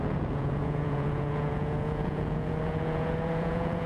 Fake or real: fake